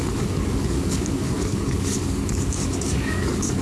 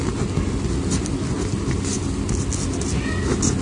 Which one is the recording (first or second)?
second